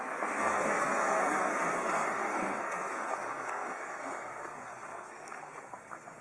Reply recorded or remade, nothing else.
remade